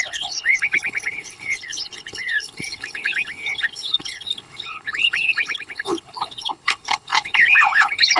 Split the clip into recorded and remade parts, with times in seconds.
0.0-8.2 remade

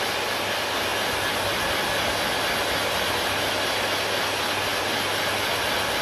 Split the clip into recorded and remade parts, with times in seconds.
0.0-6.0 recorded